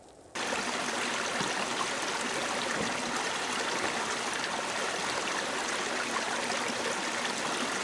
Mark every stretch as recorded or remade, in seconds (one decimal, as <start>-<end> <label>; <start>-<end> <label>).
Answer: 0.0-7.8 recorded